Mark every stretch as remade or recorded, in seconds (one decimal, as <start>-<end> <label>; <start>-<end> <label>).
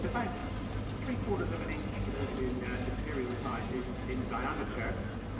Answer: 0.0-3.5 recorded; 3.5-4.2 remade; 4.2-5.4 recorded